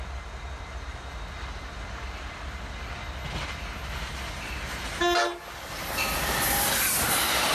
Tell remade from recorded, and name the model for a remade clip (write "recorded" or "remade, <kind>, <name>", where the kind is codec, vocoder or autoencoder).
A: recorded